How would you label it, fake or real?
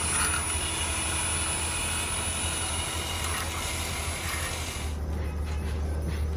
real